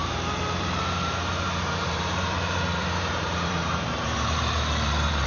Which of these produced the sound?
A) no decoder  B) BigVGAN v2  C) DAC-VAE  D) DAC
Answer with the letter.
B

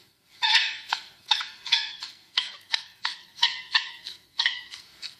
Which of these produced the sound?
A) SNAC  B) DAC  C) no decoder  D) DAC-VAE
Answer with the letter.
A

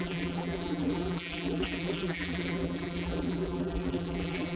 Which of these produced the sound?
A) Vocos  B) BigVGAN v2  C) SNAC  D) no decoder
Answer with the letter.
B